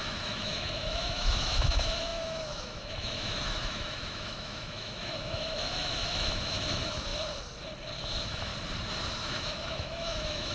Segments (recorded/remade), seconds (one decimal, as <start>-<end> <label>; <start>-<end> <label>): 0.0-7.1 remade; 7.1-8.0 recorded; 8.0-8.5 remade; 8.5-9.2 recorded; 9.2-10.5 remade

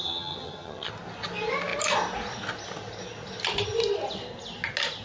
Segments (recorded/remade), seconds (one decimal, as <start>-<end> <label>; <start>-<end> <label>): 0.0-0.9 remade; 0.9-5.0 recorded